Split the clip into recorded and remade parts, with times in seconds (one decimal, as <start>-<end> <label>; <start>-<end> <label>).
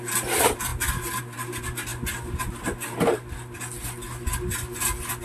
0.0-5.2 recorded